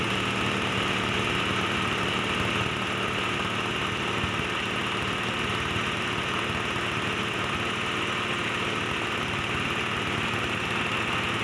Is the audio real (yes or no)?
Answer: yes